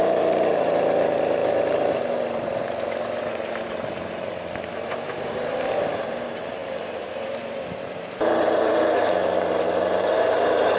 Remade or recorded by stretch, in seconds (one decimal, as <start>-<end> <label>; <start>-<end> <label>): 0.0-10.8 remade